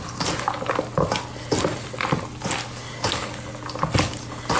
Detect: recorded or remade recorded